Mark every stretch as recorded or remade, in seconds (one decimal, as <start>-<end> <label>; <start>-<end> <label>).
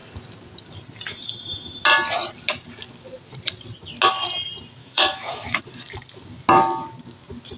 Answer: 0.0-4.8 recorded; 4.8-5.6 remade; 5.6-7.6 recorded